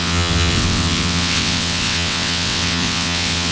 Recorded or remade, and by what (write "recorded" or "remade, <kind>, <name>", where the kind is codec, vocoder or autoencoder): remade, vocoder, WaveNeXt